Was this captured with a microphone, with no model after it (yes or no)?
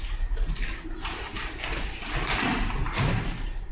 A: yes